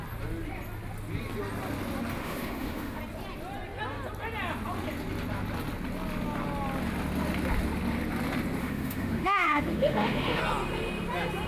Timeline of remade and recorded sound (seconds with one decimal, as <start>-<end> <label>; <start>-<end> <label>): 0.0-2.2 recorded; 2.2-3.0 remade; 3.0-8.6 recorded; 8.6-10.4 remade; 10.4-11.5 recorded